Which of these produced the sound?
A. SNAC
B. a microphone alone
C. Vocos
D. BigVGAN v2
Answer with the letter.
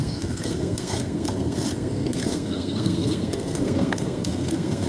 A